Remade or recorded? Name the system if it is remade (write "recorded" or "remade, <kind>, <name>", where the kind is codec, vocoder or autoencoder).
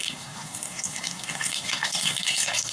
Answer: remade, codec, SNAC